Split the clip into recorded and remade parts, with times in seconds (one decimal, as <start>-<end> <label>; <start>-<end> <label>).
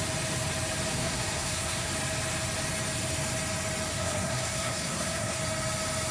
0.0-0.9 recorded; 0.9-1.9 remade; 1.9-3.9 recorded; 3.9-5.4 remade; 5.4-6.1 recorded